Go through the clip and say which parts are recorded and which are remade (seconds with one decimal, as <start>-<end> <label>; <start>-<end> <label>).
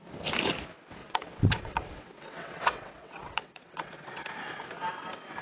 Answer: 0.0-1.0 recorded; 1.0-4.2 remade; 4.2-5.4 recorded